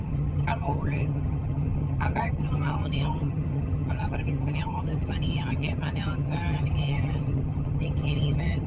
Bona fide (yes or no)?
no